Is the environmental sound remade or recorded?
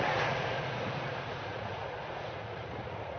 remade